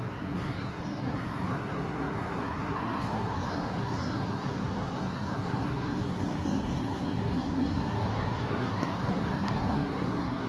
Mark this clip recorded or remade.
remade